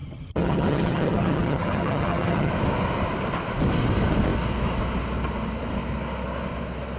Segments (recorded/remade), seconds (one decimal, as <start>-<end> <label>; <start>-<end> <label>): 0.0-2.5 remade; 2.5-7.0 recorded